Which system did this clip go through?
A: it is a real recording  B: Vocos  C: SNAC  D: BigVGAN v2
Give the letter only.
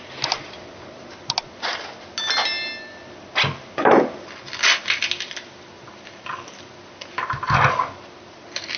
A